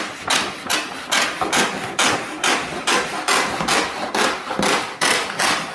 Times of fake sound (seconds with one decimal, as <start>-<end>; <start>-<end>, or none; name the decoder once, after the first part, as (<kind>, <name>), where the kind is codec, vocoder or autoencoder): none